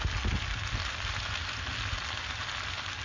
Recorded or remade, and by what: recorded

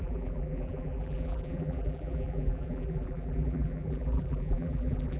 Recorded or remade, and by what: remade, vocoder, BigVGAN v2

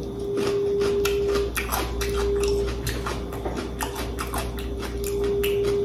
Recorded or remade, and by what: recorded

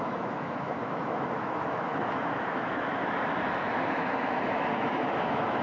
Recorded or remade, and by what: remade, autoencoder, DAC-VAE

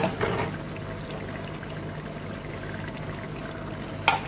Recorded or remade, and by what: recorded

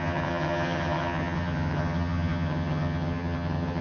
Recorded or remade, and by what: remade, vocoder, HiFi-GAN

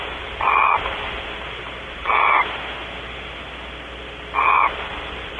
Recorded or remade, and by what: recorded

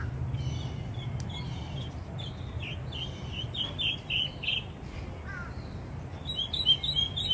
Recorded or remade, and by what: recorded